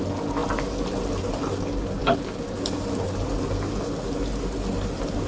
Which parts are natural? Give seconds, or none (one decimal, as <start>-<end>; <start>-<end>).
0.0-5.3